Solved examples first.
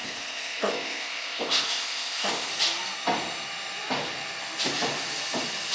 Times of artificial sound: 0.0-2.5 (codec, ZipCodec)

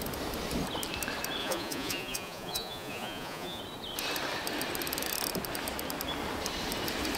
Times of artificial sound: 1.4-3.6 (vocoder, Vocos)

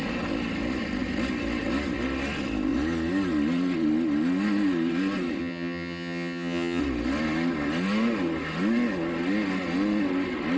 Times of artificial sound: 5.4-6.8 (vocoder, HiFi-GAN)

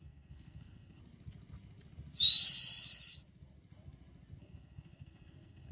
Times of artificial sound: 0.0-1.0 (codec, SNAC); 4.4-5.7

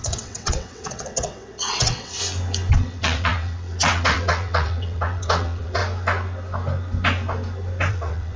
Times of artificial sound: 0.0-2.2 (vocoder, WaveNeXt); 2.7-5.8; 7.9-8.4

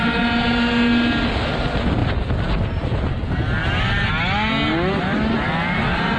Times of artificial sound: none

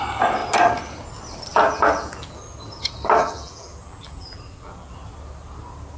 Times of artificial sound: 1.5-2.4 (vocoder, BigVGAN v2); 3.2-4.9